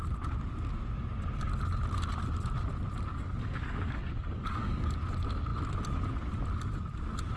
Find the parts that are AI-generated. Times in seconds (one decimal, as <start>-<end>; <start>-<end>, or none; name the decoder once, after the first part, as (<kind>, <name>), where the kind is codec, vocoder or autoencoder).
3.1-4.9 (codec, DAC)